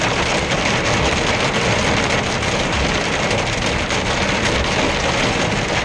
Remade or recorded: recorded